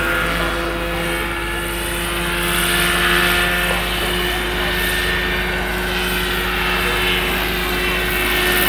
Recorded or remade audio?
recorded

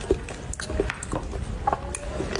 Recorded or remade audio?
recorded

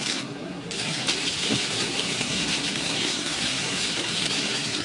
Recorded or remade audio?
remade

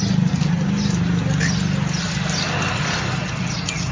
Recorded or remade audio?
recorded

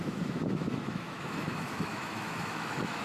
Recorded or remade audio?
remade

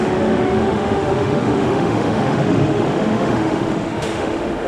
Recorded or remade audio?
remade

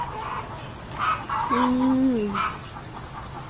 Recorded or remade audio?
recorded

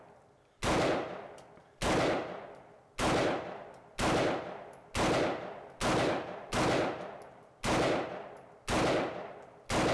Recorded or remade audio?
recorded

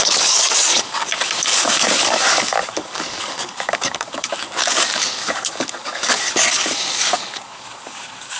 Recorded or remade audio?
remade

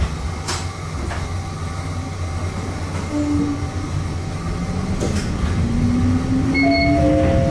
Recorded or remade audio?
recorded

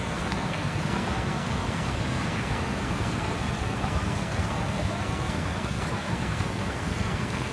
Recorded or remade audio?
remade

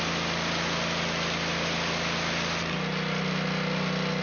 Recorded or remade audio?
recorded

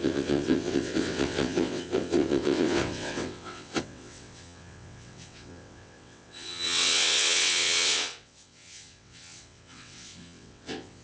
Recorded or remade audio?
remade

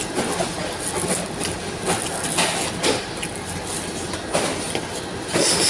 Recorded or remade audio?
recorded